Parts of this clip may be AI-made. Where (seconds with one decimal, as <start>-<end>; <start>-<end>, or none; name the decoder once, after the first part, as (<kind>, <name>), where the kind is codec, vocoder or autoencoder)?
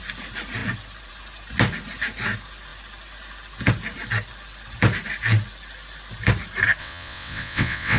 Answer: 6.8-8.0 (vocoder, WaveNeXt)